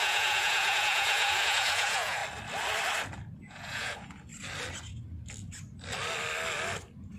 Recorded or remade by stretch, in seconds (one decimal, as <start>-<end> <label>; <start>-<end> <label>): 0.0-2.2 remade; 2.2-3.4 recorded; 3.4-4.3 remade; 4.3-7.2 recorded